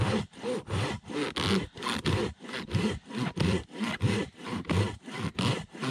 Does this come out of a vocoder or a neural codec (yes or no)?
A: yes